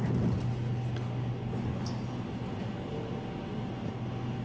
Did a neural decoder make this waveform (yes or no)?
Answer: no